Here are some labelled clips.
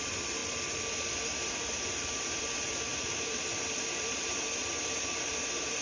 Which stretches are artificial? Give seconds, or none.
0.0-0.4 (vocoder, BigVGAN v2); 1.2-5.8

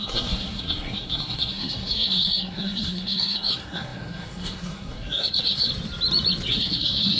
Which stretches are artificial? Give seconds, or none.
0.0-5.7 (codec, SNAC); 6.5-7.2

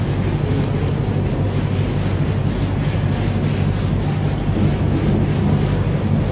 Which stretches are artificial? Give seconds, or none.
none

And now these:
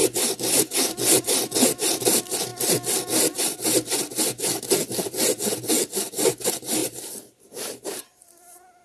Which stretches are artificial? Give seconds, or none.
6.8-8.8 (vocoder, BigVGAN v2)

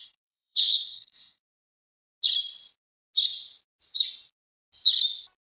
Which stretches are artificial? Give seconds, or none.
0.0-1.5 (codec, SNAC)